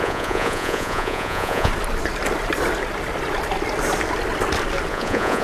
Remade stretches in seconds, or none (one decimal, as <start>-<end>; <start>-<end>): 0.0-1.7; 4.9-5.4